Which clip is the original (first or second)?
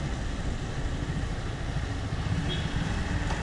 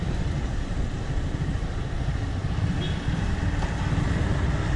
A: first